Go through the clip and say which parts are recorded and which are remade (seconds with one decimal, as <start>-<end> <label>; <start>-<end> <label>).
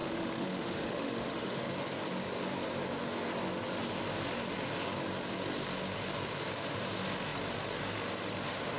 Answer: 0.0-1.7 remade; 1.7-8.8 recorded